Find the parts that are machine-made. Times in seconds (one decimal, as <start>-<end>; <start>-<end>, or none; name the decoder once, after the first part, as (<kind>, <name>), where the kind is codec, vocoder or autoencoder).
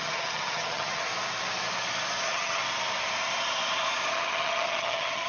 0.0-1.1 (vocoder, HiFi-GAN); 2.2-2.6; 4.1-5.3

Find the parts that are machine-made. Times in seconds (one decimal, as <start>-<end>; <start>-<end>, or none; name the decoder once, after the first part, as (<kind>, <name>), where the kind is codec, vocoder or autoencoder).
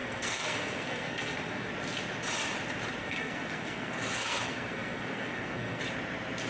0.0-1.7 (codec, SNAC); 3.0-5.8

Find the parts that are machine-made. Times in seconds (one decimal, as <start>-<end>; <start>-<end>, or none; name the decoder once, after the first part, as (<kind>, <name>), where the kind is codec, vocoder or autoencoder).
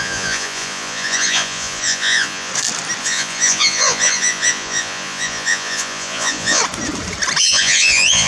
0.0-2.5 (vocoder, Vocos); 3.0-6.6; 7.4-8.3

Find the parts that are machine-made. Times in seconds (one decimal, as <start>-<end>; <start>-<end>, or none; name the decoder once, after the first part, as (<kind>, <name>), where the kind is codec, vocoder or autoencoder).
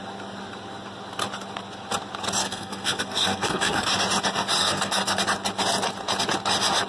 2.4-3.9 (codec, SNAC); 4.6-5.2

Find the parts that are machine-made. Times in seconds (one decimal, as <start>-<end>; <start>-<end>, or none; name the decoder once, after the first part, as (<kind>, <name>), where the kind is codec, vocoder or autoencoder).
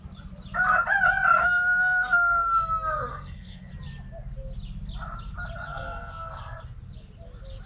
1.4-2.6 (codec, SNAC); 3.1-3.7; 5.7-6.6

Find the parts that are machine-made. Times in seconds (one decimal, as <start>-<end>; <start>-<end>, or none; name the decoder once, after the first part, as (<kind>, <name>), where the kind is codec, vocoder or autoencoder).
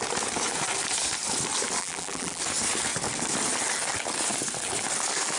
1.8-2.4 (vocoder, BigVGAN v2)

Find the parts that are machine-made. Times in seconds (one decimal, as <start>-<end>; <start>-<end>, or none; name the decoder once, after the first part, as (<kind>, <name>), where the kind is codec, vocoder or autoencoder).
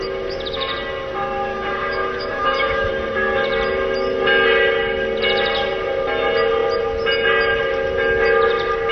1.5-2.9 (autoencoder, DAC-VAE)